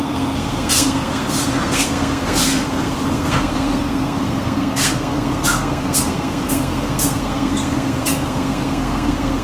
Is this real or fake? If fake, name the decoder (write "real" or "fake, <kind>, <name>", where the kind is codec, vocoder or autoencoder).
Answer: fake, codec, SNAC